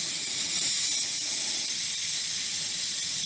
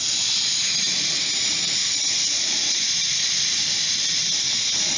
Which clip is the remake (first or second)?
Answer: first